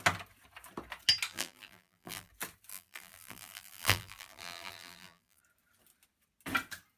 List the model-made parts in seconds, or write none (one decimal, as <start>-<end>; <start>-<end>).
1.3-2.3; 2.7-5.4